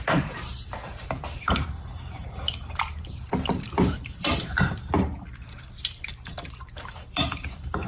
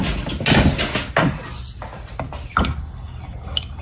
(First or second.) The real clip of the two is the second